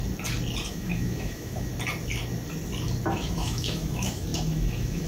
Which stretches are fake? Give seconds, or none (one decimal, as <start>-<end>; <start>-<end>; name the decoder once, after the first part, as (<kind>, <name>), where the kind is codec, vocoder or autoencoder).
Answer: 0.7-1.7 (autoencoder, DAC-VAE); 3.1-5.1